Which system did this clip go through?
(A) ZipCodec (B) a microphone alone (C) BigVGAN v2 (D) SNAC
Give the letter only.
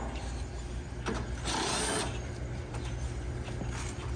B